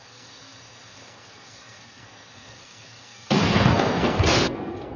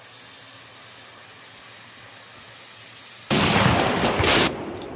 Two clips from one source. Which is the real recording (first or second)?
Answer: second